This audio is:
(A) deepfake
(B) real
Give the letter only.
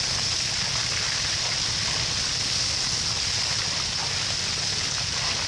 B